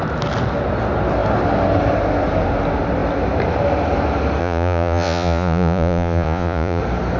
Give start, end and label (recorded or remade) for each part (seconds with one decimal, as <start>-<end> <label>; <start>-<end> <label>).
0.0-4.4 recorded; 4.4-6.8 remade; 6.8-7.2 recorded